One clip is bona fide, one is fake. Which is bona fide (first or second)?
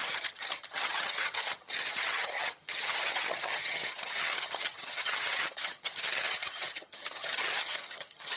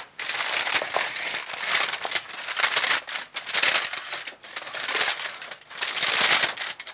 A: second